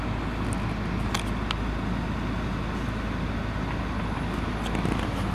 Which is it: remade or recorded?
recorded